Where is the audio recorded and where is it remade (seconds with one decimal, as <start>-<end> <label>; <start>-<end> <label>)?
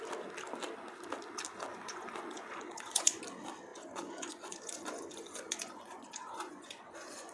0.0-1.7 recorded; 1.7-3.2 remade; 3.2-3.7 recorded; 3.7-7.3 remade